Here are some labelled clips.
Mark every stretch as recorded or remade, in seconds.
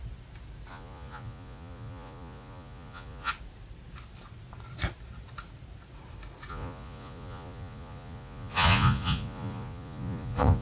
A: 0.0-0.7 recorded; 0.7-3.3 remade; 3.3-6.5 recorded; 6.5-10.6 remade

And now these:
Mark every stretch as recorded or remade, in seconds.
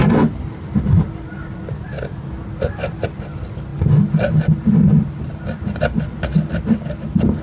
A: 0.0-7.4 recorded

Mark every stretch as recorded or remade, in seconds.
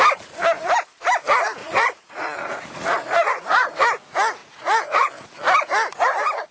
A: 0.0-1.6 recorded; 1.6-3.8 remade; 3.8-4.4 recorded; 4.4-5.1 remade; 5.1-6.5 recorded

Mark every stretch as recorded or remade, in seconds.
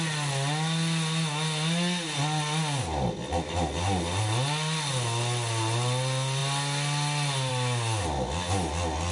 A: 0.0-9.1 recorded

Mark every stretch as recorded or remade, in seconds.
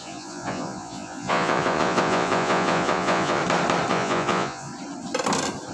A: 0.0-3.4 remade; 3.4-3.9 recorded; 3.9-4.7 remade; 4.7-5.7 recorded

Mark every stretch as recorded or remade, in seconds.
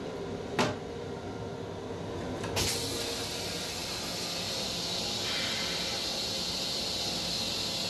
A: 0.0-7.9 recorded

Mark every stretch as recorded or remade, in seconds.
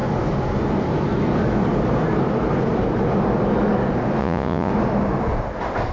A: 0.0-4.2 recorded; 4.2-4.7 remade; 4.7-5.9 recorded